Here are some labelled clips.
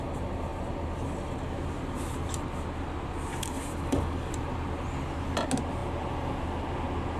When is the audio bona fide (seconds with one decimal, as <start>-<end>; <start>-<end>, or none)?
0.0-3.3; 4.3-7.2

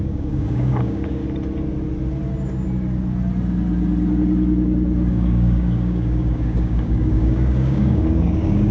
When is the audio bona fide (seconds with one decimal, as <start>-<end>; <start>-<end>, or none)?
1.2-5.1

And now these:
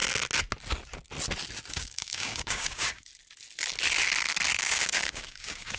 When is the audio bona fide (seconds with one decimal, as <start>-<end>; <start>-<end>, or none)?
0.0-1.7; 3.1-4.6